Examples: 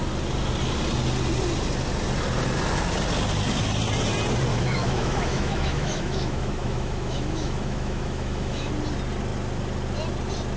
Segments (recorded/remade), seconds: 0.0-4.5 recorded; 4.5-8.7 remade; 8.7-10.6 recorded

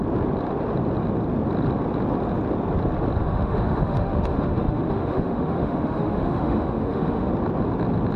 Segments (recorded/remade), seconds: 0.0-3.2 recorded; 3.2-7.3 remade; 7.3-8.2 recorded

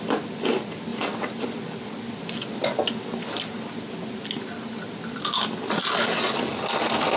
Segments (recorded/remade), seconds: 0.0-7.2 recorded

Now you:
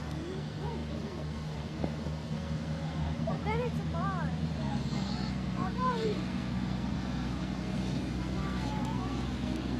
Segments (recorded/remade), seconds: 0.0-3.4 remade; 3.4-4.6 recorded; 4.6-9.8 remade

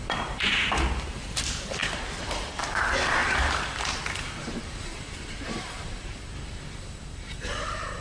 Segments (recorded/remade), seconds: 0.0-8.0 remade